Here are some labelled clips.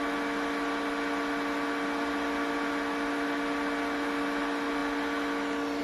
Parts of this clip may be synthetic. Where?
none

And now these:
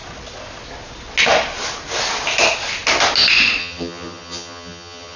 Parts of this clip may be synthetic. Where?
3.6-5.2 (vocoder, HiFi-GAN)

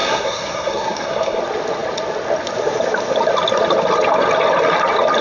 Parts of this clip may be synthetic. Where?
0.0-1.4 (codec, SNAC)